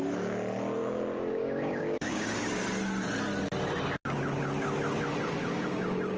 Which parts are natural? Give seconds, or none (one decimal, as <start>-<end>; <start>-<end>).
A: 0.0-0.8; 2.4-5.4